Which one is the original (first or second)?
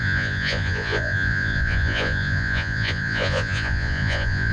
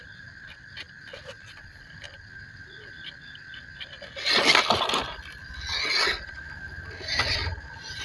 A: second